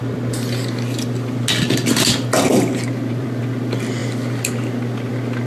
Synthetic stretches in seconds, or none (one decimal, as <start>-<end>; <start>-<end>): 2.5-3.4